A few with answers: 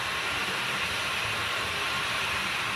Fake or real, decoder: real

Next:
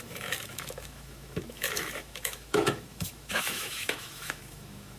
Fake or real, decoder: fake, autoencoder, DAC-VAE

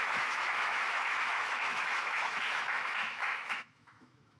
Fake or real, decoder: fake, autoencoder, DAC-VAE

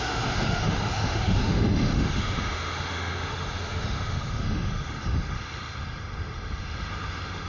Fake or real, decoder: fake, autoencoder, DAC-VAE